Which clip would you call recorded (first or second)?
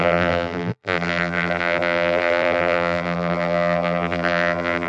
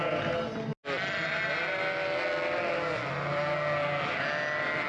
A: second